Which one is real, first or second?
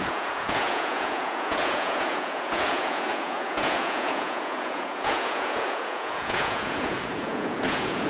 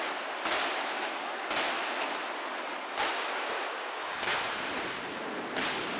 second